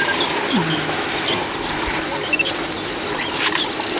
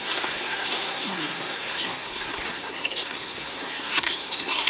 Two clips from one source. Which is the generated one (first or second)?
second